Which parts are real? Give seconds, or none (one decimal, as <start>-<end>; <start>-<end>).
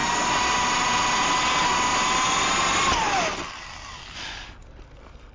0.0-5.3